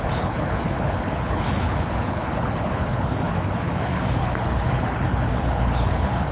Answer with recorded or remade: remade